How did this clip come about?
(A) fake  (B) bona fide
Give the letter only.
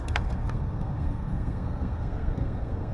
A